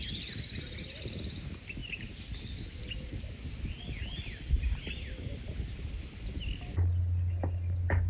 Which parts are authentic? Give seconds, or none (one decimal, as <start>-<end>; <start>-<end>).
0.0-8.1

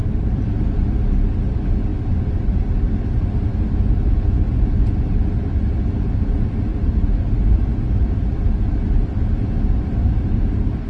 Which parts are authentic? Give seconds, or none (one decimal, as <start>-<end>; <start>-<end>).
0.9-6.7; 8.7-10.9

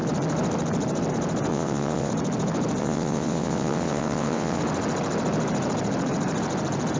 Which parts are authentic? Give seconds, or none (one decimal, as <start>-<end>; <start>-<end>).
0.0-1.5; 2.1-2.8; 4.6-7.0

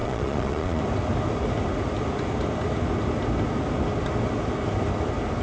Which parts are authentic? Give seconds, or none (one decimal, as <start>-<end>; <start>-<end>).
0.8-5.4

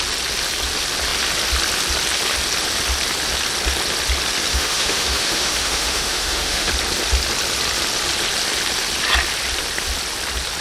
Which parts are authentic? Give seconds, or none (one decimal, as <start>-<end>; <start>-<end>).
0.0-4.5; 6.7-10.6

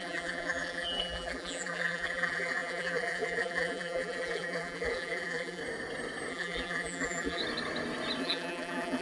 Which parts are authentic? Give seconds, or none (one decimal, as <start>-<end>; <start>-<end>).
5.6-6.3; 7.4-8.2